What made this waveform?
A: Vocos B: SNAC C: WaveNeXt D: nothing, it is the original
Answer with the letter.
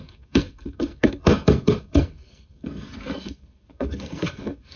B